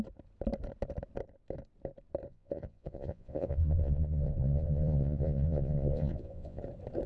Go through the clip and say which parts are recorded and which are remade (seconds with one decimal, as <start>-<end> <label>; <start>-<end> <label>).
0.0-2.3 recorded; 2.3-6.6 remade; 6.6-7.1 recorded